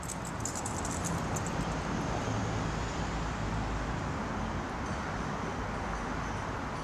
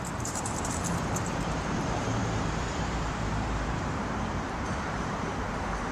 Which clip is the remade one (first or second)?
second